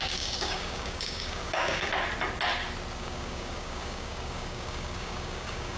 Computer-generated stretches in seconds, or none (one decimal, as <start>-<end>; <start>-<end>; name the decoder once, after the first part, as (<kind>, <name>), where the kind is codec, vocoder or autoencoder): 0.0-1.9 (codec, DAC); 3.0-5.8